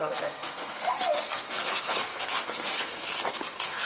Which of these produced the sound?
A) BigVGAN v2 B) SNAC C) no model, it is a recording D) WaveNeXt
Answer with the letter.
B